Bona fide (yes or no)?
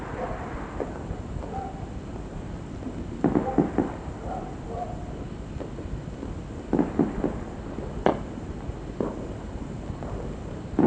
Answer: yes